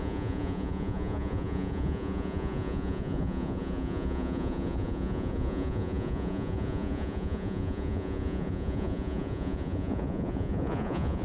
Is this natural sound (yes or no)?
no